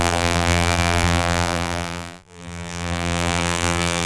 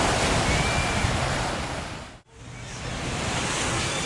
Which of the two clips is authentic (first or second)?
second